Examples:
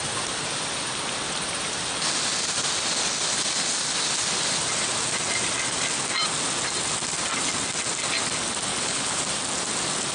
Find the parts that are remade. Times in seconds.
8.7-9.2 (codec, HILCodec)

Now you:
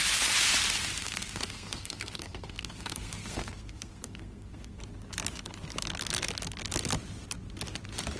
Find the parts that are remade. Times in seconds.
1.0-4.8 (codec, SNAC)